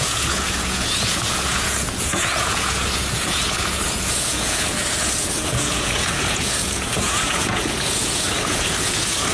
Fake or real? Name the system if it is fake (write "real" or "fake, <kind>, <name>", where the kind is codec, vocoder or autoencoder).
fake, vocoder, Vocos